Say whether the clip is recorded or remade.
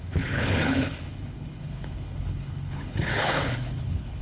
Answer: remade